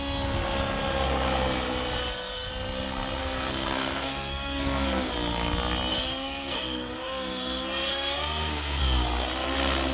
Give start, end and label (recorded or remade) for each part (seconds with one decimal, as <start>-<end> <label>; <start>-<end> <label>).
0.0-2.0 recorded; 2.0-2.5 remade; 2.5-3.2 recorded; 3.2-5.1 remade; 5.1-5.9 recorded; 5.9-8.8 remade; 8.8-9.9 recorded